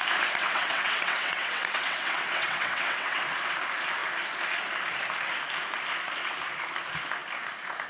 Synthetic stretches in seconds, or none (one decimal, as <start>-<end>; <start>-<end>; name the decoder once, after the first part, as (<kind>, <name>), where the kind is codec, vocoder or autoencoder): 0.4-3.2 (vocoder, WaveNeXt)